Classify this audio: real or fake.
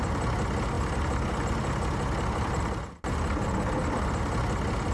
real